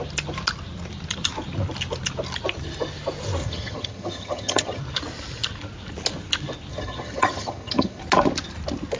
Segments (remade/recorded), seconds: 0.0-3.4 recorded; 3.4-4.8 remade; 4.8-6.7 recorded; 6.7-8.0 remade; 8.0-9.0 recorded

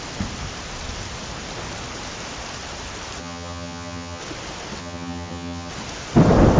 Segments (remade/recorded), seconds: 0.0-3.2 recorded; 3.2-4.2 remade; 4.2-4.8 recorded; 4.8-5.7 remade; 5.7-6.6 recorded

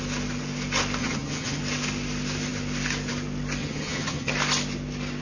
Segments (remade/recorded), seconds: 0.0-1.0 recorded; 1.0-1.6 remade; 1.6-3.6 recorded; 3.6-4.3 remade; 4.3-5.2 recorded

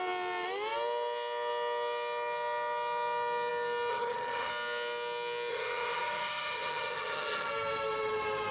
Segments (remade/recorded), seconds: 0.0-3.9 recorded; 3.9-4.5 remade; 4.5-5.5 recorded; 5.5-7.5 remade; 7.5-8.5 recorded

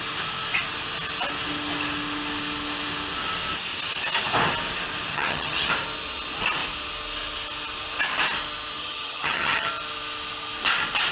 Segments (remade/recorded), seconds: 0.0-5.1 recorded; 5.1-5.7 remade; 5.7-8.8 recorded; 8.8-9.7 remade; 9.7-11.1 recorded